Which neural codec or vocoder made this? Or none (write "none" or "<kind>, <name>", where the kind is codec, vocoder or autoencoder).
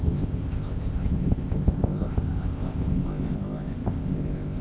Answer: codec, ZipCodec